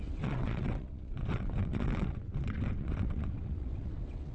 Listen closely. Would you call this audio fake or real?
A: fake